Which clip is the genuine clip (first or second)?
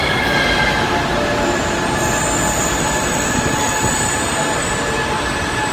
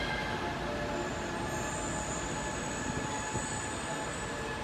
second